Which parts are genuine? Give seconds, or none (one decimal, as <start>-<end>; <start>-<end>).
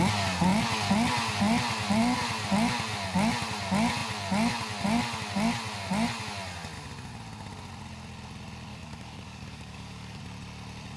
0.0-8.7; 10.2-11.0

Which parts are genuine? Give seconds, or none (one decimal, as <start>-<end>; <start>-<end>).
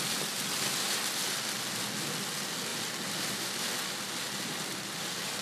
0.0-5.4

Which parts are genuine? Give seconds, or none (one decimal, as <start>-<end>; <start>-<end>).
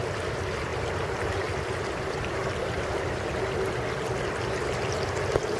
0.0-5.6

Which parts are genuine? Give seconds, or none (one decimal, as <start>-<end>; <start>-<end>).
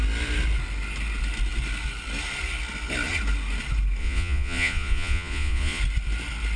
0.0-4.0; 5.8-6.6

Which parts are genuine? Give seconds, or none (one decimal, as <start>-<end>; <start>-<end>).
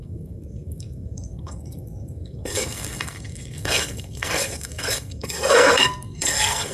none